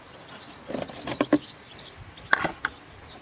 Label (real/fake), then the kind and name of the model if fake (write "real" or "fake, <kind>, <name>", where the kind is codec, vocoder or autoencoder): real